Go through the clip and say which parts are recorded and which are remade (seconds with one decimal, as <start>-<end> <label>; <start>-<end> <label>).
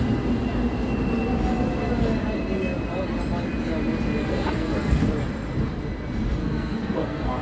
0.0-4.2 recorded; 4.2-5.1 remade; 5.1-6.4 recorded; 6.4-7.4 remade